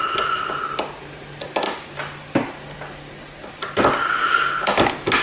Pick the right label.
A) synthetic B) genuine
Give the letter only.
B